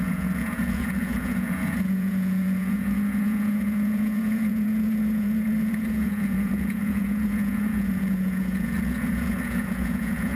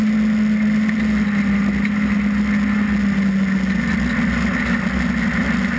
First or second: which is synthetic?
first